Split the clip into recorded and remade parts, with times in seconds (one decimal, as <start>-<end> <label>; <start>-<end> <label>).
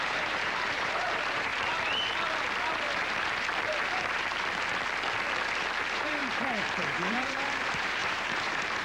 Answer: 0.0-1.5 remade; 1.5-5.6 recorded; 5.6-8.8 remade